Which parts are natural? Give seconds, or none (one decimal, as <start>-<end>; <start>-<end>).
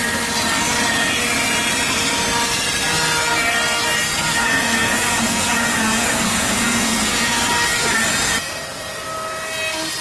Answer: 0.0-4.1; 7.4-10.0